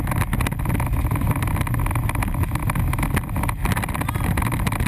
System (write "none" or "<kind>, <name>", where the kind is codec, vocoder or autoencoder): none